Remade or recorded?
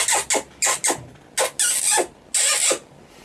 recorded